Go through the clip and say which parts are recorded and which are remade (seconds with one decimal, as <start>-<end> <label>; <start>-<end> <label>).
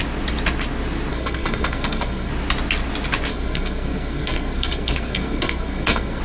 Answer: 0.0-1.1 recorded; 1.1-2.3 remade; 2.3-3.3 recorded; 3.3-6.2 remade